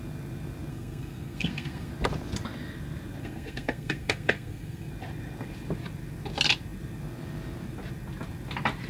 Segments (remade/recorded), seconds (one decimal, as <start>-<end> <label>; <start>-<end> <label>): 0.0-0.7 recorded; 0.7-1.9 remade; 1.9-3.2 recorded; 3.2-4.9 remade; 4.9-8.9 recorded